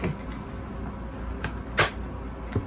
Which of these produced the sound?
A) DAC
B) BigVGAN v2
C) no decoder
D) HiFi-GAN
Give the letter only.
C